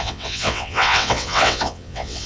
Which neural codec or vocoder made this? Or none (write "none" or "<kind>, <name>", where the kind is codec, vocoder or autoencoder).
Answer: vocoder, WaveNeXt